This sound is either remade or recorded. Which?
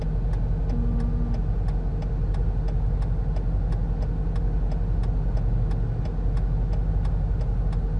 recorded